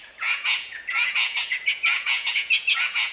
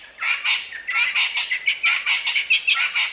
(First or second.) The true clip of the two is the second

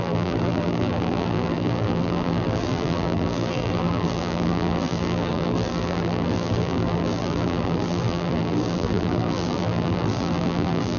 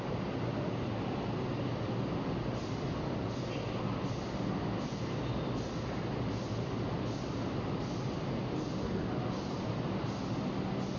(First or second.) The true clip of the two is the second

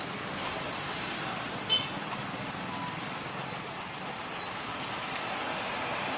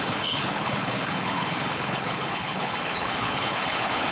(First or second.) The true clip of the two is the first